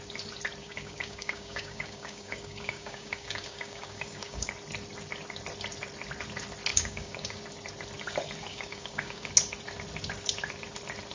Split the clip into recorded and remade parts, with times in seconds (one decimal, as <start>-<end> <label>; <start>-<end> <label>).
0.0-0.6 recorded; 0.6-4.5 remade; 4.5-6.7 recorded; 6.7-7.4 remade; 7.4-8.5 recorded; 8.5-9.3 remade; 9.3-11.1 recorded